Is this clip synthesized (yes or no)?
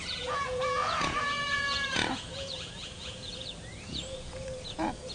yes